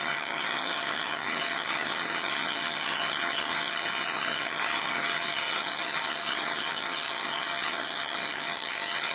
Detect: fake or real fake